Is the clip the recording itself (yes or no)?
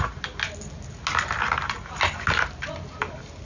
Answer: yes